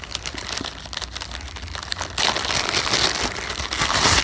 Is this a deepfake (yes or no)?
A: no